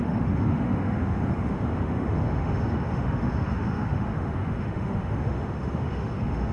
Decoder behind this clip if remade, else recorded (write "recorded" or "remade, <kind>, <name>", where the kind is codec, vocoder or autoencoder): remade, autoencoder, DAC-VAE